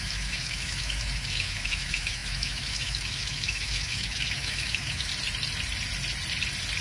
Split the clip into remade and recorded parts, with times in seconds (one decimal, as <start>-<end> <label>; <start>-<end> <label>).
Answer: 0.0-5.1 remade; 5.1-6.8 recorded